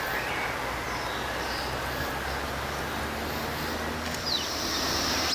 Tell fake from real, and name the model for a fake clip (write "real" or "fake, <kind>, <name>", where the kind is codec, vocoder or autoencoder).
real